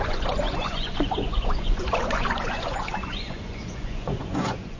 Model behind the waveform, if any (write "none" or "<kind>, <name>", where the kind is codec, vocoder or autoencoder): vocoder, Vocos